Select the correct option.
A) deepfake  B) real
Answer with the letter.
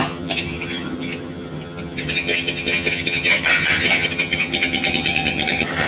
A